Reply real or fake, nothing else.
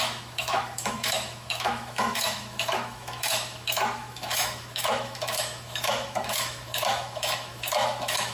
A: fake